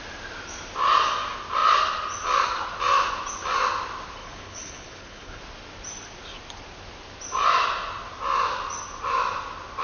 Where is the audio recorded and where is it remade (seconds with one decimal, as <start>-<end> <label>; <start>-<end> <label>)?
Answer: 0.0-4.2 recorded; 4.2-5.4 remade; 5.4-9.8 recorded